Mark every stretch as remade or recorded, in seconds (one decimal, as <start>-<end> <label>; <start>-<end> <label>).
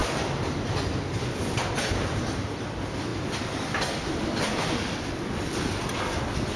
0.0-6.6 recorded